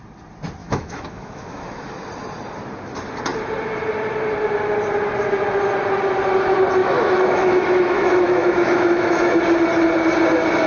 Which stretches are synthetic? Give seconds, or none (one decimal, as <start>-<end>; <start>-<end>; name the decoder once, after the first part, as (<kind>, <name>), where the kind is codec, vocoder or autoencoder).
0.6-1.9 (autoencoder, DAC-VAE); 6.8-9.4